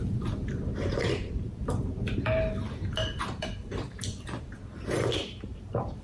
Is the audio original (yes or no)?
no